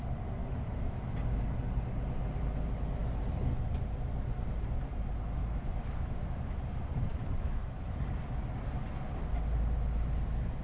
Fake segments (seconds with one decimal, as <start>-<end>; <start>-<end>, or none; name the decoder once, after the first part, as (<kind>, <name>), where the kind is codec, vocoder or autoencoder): 0.4-1.0 (autoencoder, DAC-VAE); 5.4-6.4; 7.1-7.8

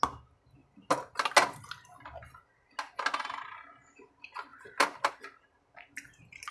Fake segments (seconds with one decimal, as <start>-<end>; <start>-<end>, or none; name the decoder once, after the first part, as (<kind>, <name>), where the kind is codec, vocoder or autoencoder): none